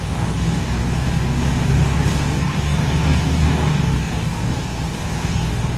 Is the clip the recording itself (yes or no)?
no